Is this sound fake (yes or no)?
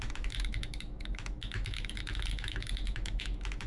yes